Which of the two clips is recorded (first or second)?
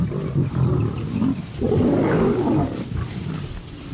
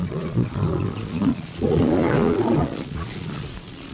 first